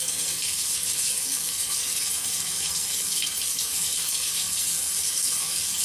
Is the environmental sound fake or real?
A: fake